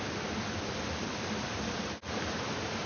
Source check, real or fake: real